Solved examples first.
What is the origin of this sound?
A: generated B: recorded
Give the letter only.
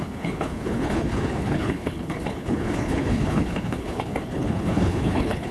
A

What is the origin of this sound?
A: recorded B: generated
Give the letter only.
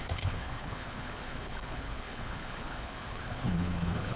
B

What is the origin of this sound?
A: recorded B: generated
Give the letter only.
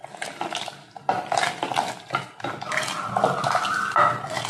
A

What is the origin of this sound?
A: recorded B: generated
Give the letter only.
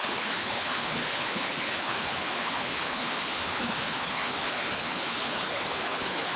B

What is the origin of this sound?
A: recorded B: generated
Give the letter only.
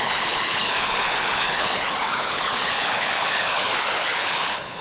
B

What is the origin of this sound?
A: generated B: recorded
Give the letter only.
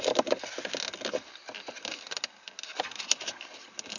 B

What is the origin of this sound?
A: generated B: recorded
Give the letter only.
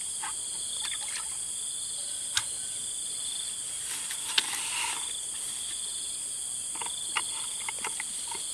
B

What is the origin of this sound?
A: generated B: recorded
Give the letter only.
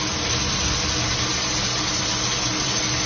B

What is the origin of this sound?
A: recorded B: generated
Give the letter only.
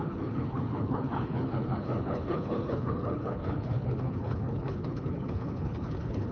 B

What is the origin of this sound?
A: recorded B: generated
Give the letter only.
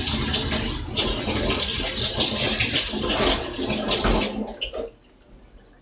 A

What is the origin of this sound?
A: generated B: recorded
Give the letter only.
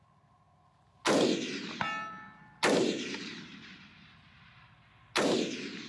B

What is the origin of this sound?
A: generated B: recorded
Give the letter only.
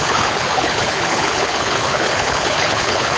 A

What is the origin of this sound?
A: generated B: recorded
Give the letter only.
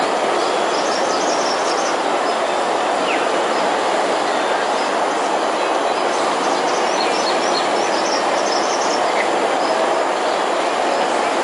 B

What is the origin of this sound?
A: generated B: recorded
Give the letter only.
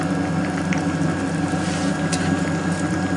B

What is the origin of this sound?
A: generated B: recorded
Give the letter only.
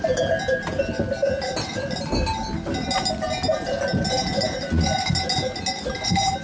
B